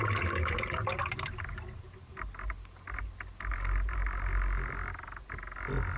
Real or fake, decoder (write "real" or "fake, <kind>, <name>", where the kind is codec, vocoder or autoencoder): real